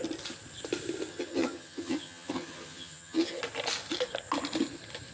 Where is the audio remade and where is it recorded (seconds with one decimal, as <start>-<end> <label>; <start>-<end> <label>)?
0.0-1.1 recorded; 1.1-3.4 remade; 3.4-5.1 recorded